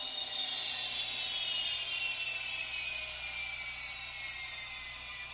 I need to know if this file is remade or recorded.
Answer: recorded